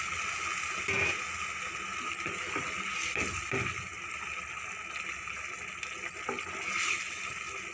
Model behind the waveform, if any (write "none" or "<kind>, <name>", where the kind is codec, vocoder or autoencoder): none